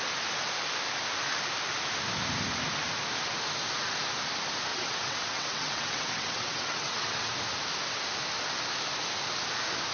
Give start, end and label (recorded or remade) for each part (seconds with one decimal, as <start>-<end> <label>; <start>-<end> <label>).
0.0-4.7 recorded; 4.7-7.3 remade; 7.3-9.9 recorded